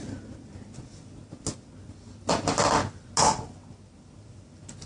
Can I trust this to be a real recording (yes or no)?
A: yes